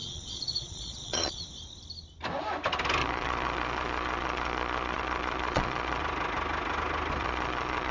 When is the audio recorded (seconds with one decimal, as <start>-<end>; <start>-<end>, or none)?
1.4-3.0; 6.0-7.2